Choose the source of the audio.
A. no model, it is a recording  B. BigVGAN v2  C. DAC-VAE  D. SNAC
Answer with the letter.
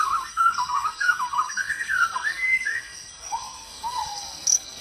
D